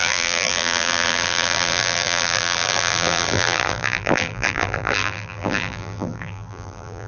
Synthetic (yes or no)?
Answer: yes